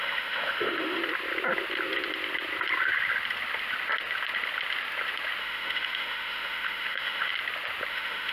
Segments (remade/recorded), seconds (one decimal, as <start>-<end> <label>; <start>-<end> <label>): 0.0-1.0 remade; 1.0-5.4 recorded; 5.4-7.3 remade; 7.3-7.9 recorded; 7.9-8.3 remade